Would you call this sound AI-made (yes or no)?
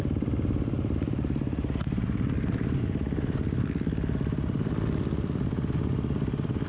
yes